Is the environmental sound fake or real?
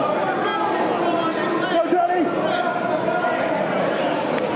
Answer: real